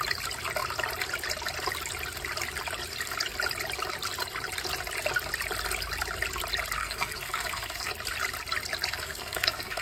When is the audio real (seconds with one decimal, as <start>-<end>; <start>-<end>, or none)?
0.0-6.8; 7.9-8.9